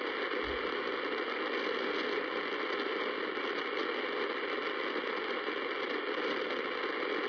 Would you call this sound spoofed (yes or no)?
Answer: no